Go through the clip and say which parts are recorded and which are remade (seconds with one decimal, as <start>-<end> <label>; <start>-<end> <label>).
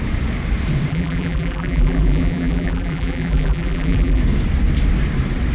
0.0-0.9 recorded; 0.9-4.2 remade; 4.2-5.5 recorded